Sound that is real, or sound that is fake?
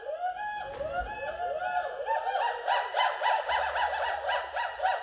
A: real